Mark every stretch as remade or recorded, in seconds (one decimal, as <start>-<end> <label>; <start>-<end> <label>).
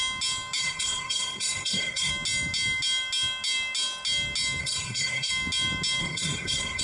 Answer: 0.0-0.6 recorded; 0.6-2.1 remade; 2.1-4.6 recorded; 4.6-5.3 remade; 5.3-6.0 recorded; 6.0-6.8 remade